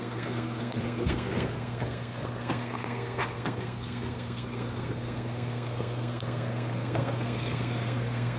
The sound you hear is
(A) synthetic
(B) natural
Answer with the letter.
A